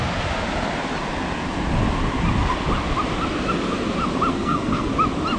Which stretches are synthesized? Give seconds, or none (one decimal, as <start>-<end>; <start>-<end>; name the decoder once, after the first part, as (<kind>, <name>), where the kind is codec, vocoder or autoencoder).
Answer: 4.3-4.9 (codec, SNAC)